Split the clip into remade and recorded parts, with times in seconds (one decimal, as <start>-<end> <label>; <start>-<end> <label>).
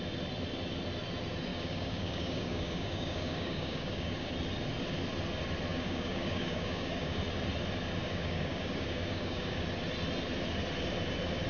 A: 0.0-1.5 recorded; 1.5-4.3 remade; 4.3-5.7 recorded; 5.7-7.2 remade; 7.2-8.0 recorded; 8.0-9.6 remade; 9.6-11.5 recorded